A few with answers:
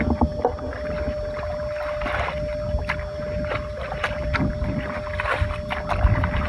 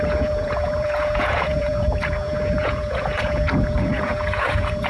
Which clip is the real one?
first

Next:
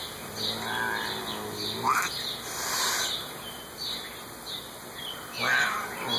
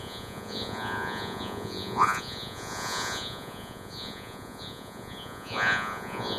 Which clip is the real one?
first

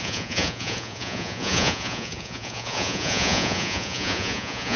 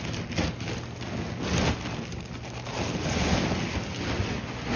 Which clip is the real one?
second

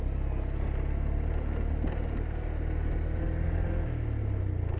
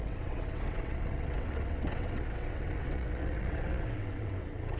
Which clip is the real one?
first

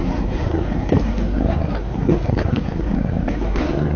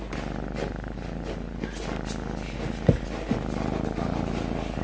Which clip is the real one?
second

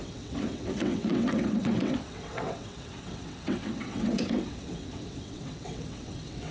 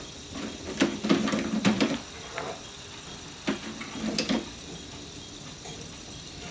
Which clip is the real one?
second